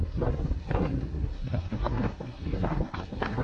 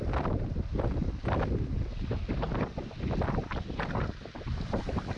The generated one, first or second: first